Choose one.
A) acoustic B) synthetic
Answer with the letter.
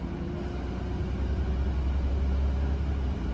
A